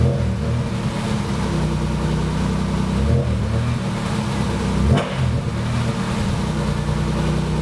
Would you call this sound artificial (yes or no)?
no